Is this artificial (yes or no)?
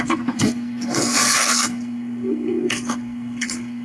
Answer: yes